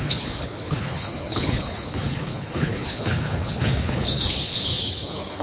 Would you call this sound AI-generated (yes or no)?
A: yes